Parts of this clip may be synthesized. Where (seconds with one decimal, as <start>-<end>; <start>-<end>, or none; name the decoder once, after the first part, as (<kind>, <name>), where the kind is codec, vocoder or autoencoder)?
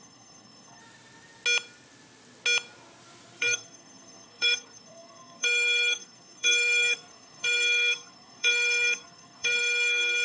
0.0-0.8 (codec, SNAC); 3.4-10.2